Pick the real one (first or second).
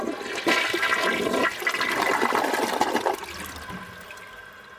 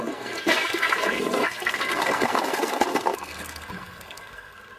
first